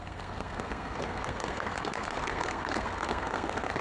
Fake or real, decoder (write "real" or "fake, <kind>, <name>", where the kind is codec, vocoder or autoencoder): fake, codec, SNAC